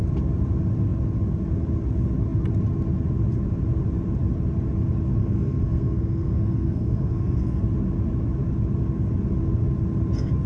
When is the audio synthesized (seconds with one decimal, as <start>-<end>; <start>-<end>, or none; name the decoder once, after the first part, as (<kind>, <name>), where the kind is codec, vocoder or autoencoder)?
5.2-7.6 (codec, SNAC)